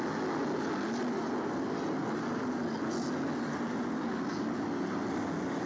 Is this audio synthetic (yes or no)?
no